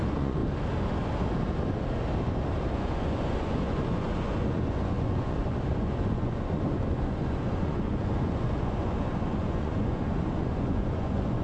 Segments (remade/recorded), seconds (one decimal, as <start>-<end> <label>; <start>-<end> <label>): 0.0-0.4 remade; 0.4-2.7 recorded; 2.7-11.4 remade